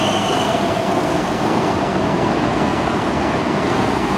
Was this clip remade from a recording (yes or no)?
yes